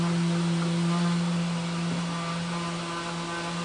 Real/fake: real